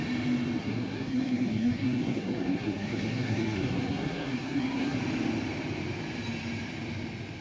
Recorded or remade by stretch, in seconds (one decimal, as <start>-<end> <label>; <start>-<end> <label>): 0.0-0.6 recorded; 0.6-5.0 remade; 5.0-7.4 recorded